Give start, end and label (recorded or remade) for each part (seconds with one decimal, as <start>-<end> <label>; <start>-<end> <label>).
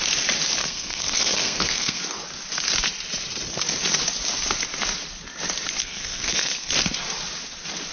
0.0-0.6 recorded; 0.6-2.0 remade; 2.0-5.8 recorded; 5.8-6.7 remade; 6.7-7.9 recorded